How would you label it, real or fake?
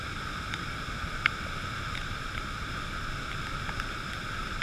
real